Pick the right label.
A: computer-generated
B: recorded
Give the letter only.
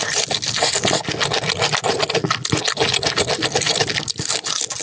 B